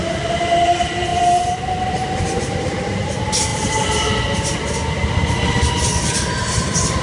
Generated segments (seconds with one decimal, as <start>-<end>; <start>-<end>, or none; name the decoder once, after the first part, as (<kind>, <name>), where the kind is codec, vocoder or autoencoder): 0.0-3.5 (vocoder, BigVGAN v2); 6.5-7.0

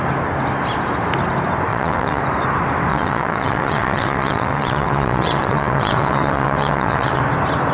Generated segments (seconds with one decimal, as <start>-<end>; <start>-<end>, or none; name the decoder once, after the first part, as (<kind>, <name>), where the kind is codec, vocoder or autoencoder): 1.7-2.2 (vocoder, WaveNeXt); 2.9-7.2

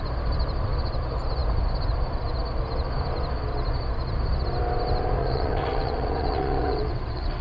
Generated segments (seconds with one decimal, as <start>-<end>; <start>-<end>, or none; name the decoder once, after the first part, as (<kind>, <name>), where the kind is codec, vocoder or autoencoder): 5.2-7.4 (vocoder, WaveNeXt)

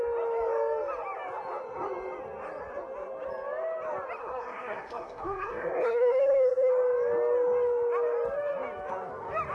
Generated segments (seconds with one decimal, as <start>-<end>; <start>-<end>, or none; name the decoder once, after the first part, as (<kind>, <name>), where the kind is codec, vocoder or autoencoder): 4.2-6.7 (codec, SNAC)

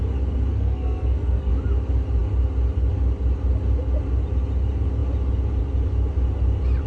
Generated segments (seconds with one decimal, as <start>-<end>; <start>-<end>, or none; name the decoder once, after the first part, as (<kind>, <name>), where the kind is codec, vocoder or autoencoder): 0.5-1.5 (codec, SNAC)

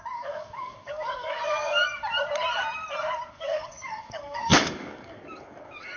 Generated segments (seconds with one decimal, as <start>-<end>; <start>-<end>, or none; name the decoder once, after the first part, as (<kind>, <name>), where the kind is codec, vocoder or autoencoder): 0.0-2.0 (codec, DAC); 3.3-6.0

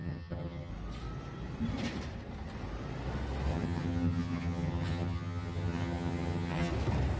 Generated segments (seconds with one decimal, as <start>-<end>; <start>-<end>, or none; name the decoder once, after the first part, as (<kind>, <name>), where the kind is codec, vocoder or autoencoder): 0.0-0.7 (vocoder, HiFi-GAN); 3.5-6.7

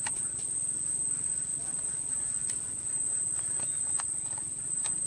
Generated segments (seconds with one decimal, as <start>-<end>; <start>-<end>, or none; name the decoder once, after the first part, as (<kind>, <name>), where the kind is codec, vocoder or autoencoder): 1.5-2.1 (vocoder, Vocos)